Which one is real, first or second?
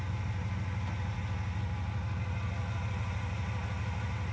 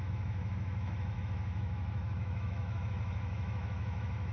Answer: first